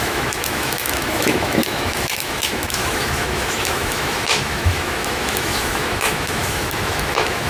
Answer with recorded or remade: remade